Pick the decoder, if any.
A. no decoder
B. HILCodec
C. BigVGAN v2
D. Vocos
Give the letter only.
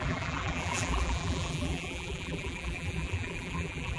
C